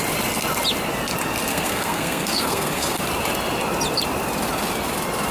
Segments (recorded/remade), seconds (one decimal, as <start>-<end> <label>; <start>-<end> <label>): 0.0-1.5 recorded; 1.5-3.0 remade; 3.0-5.3 recorded